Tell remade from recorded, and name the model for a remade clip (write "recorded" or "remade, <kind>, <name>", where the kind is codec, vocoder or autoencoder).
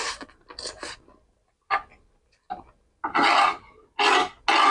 recorded